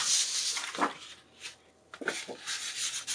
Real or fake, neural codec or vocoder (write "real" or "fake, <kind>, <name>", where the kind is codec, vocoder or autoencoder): real